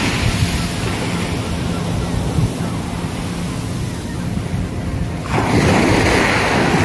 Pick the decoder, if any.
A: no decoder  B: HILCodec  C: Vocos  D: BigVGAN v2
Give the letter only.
A